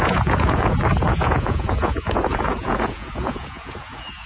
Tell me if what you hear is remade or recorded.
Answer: remade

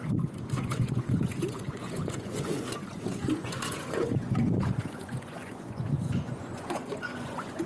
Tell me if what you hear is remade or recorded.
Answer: remade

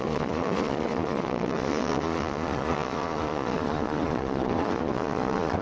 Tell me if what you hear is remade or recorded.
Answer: remade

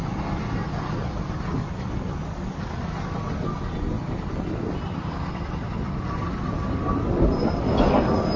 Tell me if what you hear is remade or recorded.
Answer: recorded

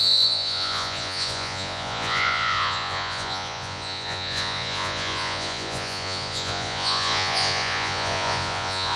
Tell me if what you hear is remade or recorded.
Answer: remade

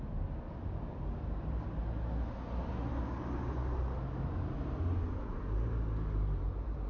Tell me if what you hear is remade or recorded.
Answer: recorded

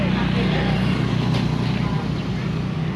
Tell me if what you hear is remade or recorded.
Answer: recorded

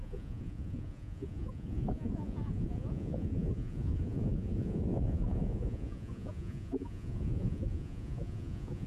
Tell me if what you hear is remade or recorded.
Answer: remade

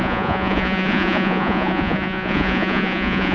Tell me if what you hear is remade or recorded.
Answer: remade